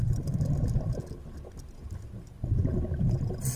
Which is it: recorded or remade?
recorded